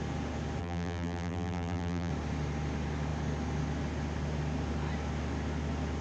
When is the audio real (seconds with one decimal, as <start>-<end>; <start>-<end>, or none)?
0.0-0.6; 2.1-6.0